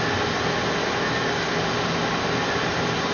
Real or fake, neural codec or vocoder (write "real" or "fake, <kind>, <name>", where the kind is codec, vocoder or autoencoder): real